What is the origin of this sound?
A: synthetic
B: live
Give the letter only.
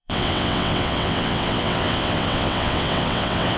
A